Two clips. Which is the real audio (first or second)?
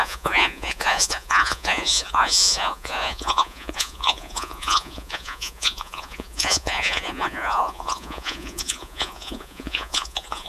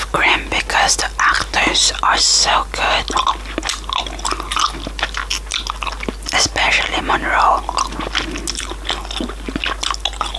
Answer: second